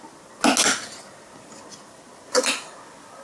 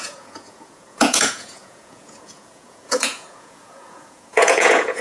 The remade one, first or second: second